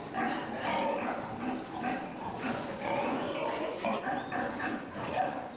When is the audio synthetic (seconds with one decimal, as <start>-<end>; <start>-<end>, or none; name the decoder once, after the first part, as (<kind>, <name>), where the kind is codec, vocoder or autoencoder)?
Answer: 2.1-5.6 (vocoder, Vocos)